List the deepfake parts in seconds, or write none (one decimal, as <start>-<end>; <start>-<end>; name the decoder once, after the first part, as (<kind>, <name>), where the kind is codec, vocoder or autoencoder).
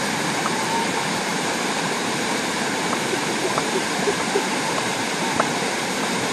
0.0-6.3 (vocoder, BigVGAN v2)